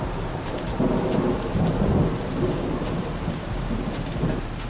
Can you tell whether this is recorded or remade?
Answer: remade